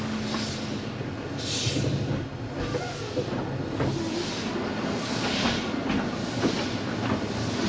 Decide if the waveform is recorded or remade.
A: recorded